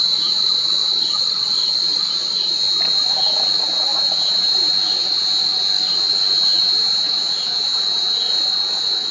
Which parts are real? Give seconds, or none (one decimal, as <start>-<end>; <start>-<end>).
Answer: 0.0-0.8; 2.1-9.1